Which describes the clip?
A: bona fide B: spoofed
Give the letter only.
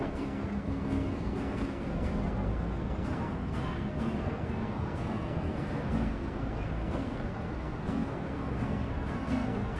B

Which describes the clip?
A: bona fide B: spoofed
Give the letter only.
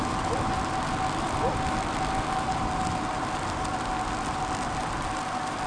B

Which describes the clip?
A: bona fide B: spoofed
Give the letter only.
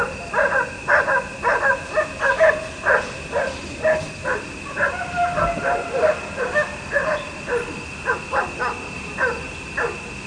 A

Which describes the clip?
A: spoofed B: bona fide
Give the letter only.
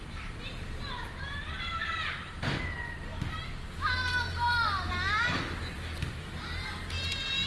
B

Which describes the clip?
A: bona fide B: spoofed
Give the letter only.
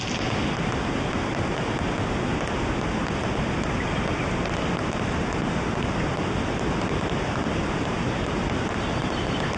A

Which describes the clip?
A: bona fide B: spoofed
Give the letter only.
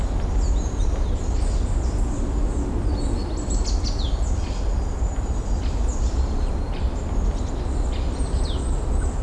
A